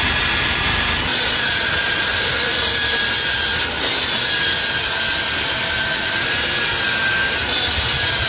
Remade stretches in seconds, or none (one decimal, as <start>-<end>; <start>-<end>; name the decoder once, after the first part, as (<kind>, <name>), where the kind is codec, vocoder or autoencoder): 1.1-2.3 (vocoder, Vocos)